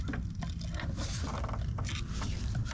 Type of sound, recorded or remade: recorded